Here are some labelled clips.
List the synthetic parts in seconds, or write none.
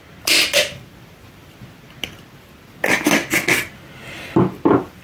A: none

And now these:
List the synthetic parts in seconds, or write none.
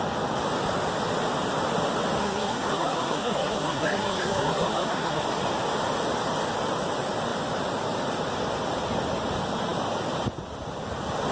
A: 2.2-5.2 (codec, SNAC)